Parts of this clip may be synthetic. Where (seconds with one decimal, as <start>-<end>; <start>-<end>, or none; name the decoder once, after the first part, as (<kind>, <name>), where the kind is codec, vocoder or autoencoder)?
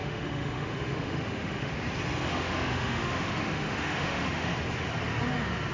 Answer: 0.0-1.7 (autoencoder, DAC-VAE); 2.3-4.5